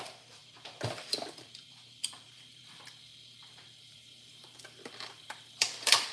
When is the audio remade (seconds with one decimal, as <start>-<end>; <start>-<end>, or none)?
0.0-3.1; 3.8-6.1